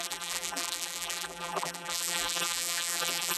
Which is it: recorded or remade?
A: remade